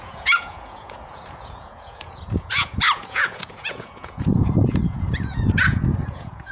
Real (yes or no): no